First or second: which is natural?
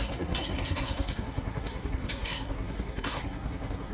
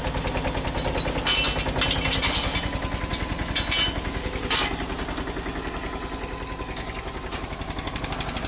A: second